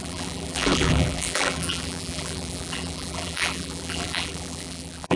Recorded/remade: remade